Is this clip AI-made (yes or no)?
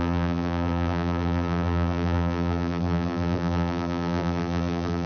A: yes